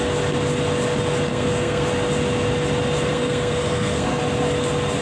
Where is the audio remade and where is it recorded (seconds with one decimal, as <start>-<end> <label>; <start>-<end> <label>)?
0.0-1.3 recorded; 1.3-1.9 remade; 1.9-3.1 recorded; 3.1-4.2 remade; 4.2-5.0 recorded